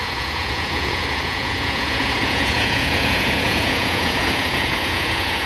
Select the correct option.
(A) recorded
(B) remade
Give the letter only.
B